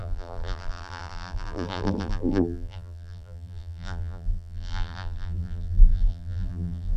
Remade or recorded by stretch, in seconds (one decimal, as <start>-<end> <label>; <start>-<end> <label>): 0.0-7.0 remade